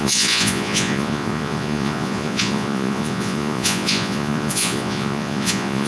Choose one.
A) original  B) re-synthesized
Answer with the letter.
B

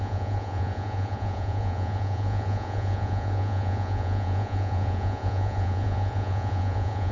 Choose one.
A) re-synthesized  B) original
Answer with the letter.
A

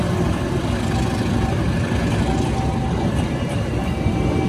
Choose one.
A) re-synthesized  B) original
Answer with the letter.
B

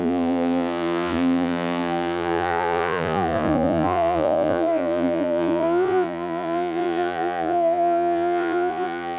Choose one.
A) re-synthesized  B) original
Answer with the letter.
A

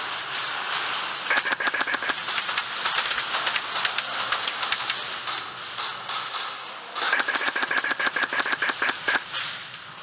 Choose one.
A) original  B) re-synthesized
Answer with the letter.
A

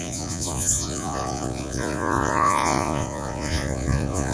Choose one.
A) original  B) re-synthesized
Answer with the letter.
B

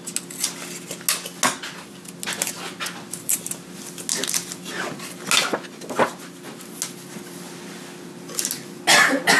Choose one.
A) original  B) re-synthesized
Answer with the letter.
A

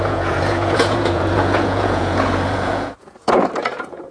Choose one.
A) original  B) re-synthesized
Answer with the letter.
B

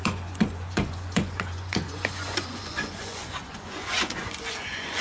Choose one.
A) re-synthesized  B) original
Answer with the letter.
A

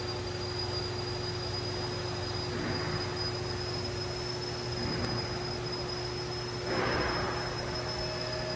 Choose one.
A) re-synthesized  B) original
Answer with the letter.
B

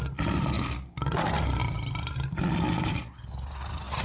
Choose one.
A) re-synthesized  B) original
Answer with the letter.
B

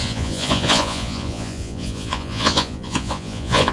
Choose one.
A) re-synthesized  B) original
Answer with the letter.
A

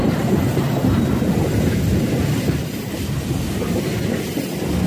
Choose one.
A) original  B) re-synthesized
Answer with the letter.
A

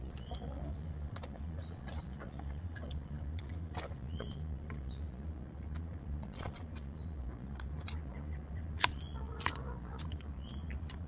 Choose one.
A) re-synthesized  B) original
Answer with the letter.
A